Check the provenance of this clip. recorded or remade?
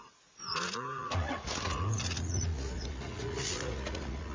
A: remade